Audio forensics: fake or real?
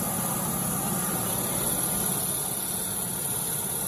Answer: real